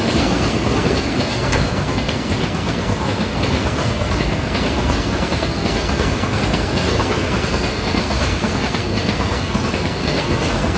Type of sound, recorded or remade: remade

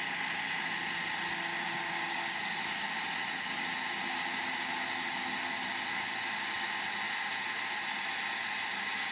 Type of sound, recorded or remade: recorded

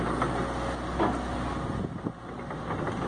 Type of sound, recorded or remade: recorded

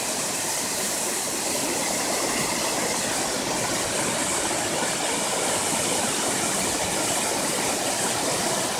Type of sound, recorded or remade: recorded